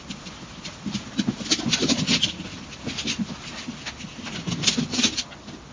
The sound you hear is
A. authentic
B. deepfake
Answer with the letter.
A